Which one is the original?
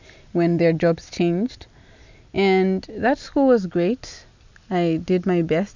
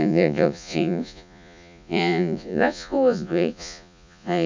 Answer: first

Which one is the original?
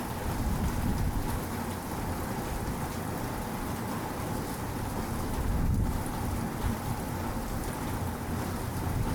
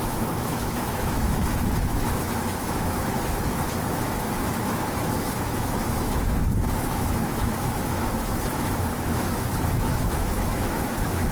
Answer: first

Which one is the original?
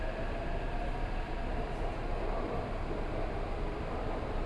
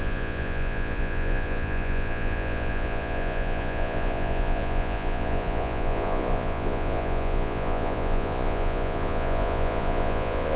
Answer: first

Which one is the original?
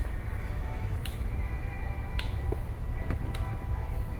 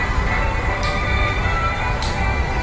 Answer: second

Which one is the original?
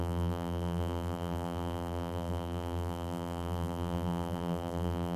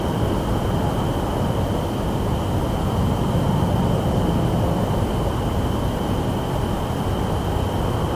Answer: second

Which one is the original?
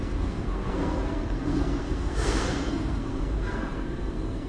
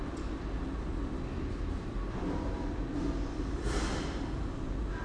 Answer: second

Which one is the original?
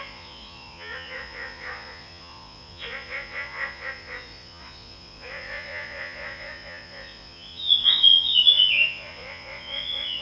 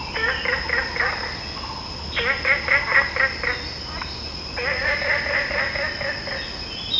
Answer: second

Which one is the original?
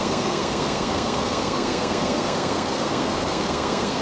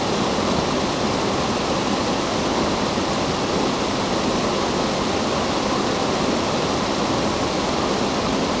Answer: second